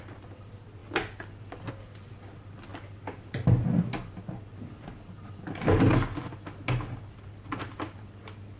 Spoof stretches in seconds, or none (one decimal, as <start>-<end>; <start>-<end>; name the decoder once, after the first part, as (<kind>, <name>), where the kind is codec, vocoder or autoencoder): none